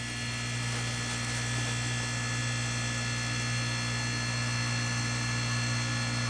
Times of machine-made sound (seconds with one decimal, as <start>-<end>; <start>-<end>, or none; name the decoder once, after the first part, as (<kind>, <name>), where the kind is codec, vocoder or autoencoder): none